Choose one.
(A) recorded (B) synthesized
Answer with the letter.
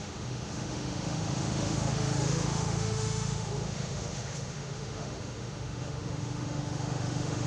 B